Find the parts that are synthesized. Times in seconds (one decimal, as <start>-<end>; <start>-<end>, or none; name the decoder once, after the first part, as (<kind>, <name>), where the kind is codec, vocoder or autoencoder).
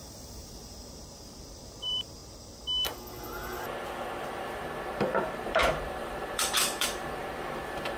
0.0-2.2 (vocoder, BigVGAN v2); 4.2-8.0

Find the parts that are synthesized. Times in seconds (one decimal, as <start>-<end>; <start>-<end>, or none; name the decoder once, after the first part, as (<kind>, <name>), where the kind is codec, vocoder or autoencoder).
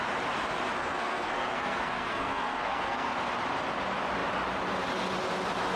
0.8-3.1 (codec, SNAC)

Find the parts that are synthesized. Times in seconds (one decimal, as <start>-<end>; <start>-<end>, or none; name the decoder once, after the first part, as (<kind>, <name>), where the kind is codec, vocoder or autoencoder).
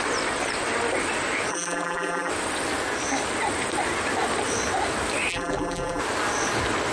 1.5-2.3 (vocoder, BigVGAN v2); 5.3-6.0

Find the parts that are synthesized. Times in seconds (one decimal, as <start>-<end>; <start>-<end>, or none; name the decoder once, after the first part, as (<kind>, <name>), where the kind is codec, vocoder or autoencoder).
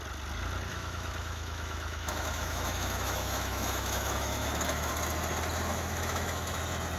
0.7-4.9 (autoencoder, DAC-VAE); 5.7-6.6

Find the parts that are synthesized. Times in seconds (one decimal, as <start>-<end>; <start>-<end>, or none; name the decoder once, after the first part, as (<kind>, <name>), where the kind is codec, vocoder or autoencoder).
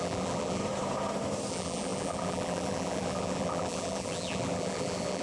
0.0-0.6 (vocoder, BigVGAN v2); 1.5-5.2